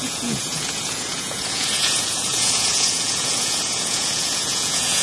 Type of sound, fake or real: fake